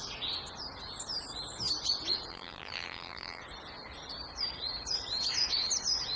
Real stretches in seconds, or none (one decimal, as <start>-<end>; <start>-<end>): 0.0-2.3; 3.4-6.2

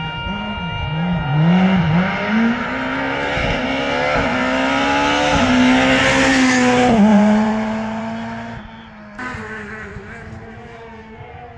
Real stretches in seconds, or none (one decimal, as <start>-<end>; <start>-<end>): 0.0-7.1; 8.0-11.6

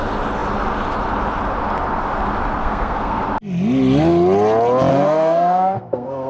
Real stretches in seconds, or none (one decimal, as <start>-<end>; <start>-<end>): 0.0-2.6; 3.2-4.9

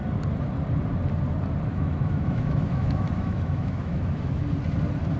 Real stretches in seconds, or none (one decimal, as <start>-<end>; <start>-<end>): 0.0-1.7; 4.4-5.2